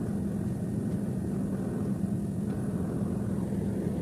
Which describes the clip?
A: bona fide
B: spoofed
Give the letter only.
A